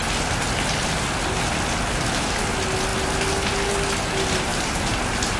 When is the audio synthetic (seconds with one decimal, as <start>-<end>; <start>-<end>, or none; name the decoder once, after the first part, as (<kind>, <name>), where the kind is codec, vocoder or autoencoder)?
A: 4.5-5.0 (vocoder, BigVGAN v2)